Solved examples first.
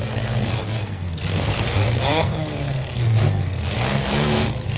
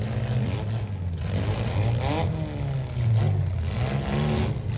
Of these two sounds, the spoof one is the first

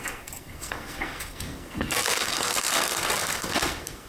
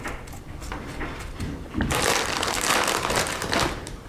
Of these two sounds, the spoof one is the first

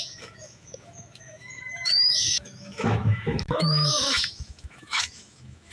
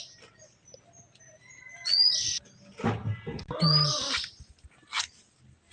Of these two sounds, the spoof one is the first